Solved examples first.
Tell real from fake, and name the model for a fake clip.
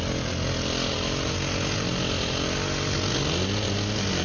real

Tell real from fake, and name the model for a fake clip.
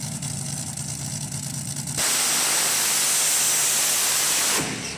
real